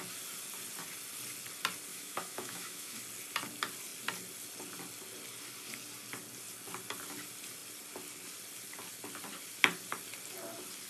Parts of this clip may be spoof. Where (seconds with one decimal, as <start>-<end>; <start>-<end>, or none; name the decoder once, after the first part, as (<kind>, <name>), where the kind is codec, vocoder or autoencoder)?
1.9-3.0 (autoencoder, DAC-VAE)